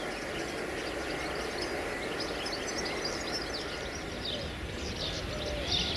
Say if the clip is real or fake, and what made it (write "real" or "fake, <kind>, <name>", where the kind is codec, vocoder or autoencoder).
real